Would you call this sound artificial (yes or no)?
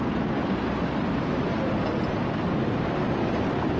no